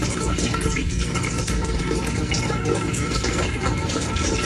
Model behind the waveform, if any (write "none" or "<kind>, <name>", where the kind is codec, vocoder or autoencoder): codec, SNAC